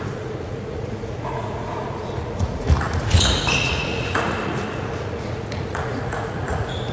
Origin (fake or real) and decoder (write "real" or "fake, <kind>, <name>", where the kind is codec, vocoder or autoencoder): fake, vocoder, Vocos